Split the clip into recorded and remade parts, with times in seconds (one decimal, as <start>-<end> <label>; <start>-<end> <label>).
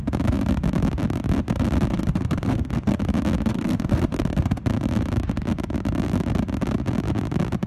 0.0-1.9 recorded; 1.9-3.0 remade; 3.0-3.5 recorded; 3.5-4.6 remade; 4.6-7.7 recorded